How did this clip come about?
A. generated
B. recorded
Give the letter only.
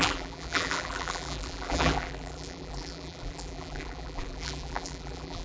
A